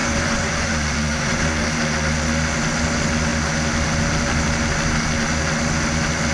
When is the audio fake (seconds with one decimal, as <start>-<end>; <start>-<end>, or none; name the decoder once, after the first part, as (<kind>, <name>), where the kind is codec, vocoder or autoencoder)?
0.0-1.4 (vocoder, Vocos)